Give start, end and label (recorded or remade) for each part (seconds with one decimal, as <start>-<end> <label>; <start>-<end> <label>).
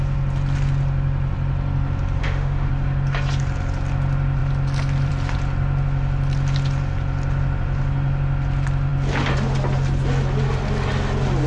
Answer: 0.0-2.2 recorded; 2.2-2.7 remade; 2.7-11.5 recorded